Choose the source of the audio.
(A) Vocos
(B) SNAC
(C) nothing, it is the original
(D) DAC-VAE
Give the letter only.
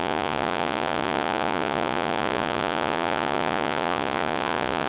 A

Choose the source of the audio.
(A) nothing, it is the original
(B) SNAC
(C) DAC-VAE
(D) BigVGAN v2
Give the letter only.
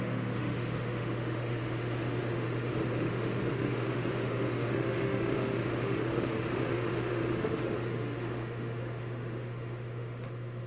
C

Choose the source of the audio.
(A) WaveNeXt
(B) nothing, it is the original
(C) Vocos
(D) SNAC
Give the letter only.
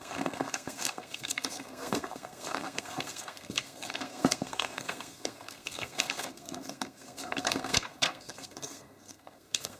D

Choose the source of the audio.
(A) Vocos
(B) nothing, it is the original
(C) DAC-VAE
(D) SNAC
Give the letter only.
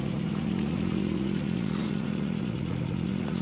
A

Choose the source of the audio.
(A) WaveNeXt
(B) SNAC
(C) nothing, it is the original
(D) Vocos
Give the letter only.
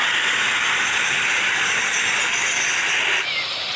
C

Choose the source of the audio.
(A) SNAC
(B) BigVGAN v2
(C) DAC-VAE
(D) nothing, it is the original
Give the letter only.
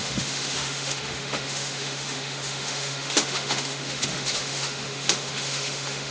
C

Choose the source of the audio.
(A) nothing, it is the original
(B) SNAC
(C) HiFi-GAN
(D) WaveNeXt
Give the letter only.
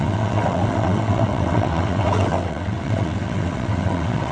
D